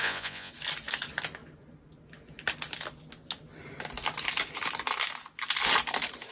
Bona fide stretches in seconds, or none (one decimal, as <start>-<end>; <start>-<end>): 0.5-6.3